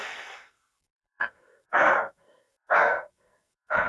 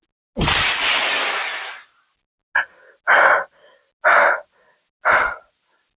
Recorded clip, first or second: second